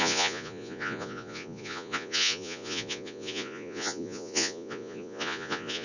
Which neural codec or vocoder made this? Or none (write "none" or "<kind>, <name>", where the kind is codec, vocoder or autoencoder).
vocoder, Vocos